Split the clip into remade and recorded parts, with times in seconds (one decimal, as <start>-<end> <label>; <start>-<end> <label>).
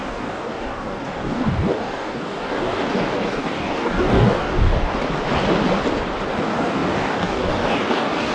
0.0-5.0 remade; 5.0-6.3 recorded; 6.3-8.3 remade